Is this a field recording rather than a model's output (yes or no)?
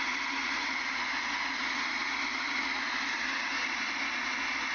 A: yes